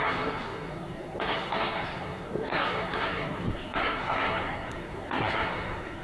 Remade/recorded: remade